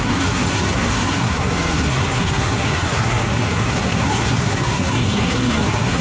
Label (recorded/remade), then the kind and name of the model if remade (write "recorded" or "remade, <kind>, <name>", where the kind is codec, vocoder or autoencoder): remade, codec, SNAC